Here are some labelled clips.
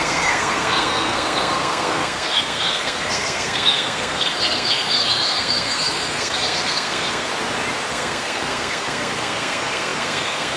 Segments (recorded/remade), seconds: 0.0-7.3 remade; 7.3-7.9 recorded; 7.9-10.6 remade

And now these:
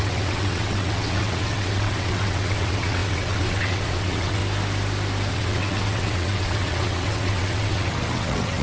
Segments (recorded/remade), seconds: 0.0-4.4 remade; 4.4-5.3 recorded; 5.3-8.6 remade

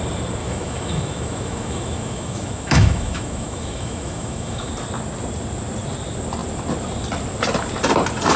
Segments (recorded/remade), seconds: 0.0-0.4 recorded; 0.4-4.7 remade; 4.7-8.4 recorded

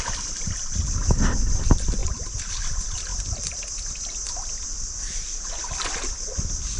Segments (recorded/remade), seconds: 0.0-3.1 recorded; 3.1-3.6 remade; 3.6-4.7 recorded; 4.7-5.5 remade; 5.5-6.8 recorded

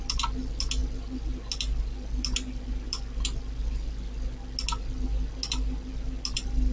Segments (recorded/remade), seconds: 0.0-6.7 recorded

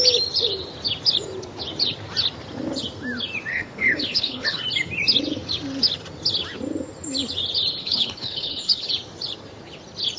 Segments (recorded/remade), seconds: 0.0-3.5 recorded; 3.5-4.6 remade; 4.6-7.8 recorded; 7.8-8.9 remade; 8.9-10.2 recorded